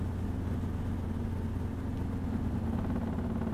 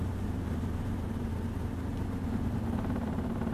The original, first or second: first